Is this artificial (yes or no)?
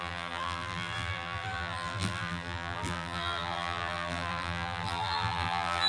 yes